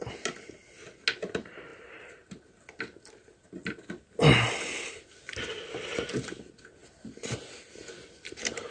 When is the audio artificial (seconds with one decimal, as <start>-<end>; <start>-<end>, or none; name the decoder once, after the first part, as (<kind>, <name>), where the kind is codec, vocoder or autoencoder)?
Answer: none